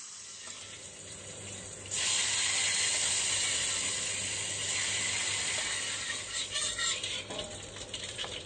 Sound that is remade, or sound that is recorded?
recorded